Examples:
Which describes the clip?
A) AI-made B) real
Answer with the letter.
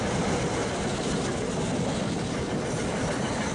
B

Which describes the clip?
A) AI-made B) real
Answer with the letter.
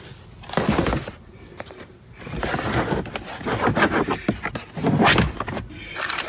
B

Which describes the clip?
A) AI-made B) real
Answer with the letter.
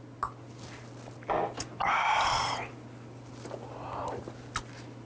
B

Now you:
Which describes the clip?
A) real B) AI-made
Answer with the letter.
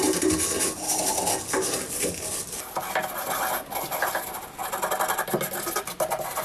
A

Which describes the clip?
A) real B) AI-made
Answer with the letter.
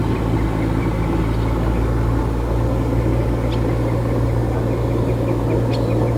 A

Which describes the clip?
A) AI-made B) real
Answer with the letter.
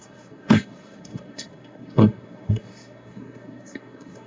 A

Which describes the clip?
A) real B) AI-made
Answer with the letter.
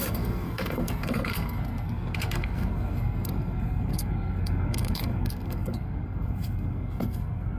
B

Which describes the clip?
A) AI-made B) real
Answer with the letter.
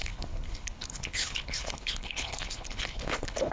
A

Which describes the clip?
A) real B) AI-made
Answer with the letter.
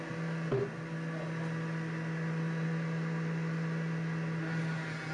A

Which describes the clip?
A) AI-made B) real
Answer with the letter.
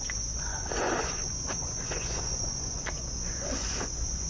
A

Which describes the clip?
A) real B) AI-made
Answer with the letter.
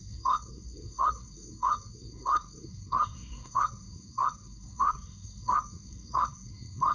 B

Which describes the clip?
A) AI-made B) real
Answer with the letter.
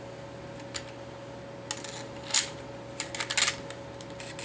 B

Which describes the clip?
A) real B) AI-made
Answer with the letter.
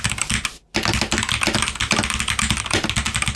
A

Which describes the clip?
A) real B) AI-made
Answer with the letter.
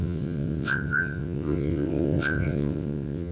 B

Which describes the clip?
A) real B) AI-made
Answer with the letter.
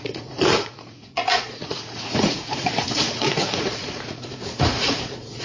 B